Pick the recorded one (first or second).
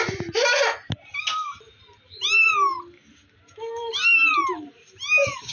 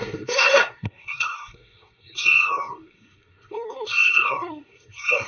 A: first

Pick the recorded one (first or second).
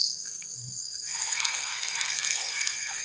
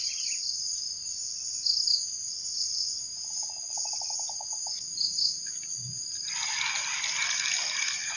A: second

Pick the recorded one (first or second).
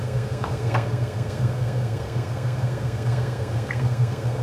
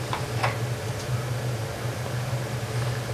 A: second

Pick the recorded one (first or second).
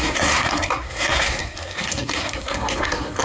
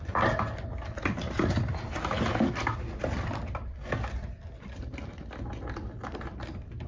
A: second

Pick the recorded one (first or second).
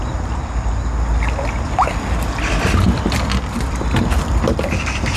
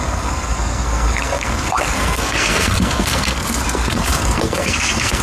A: first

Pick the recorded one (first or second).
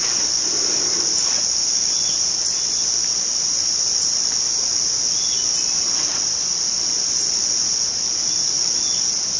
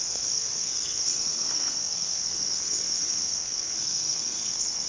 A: first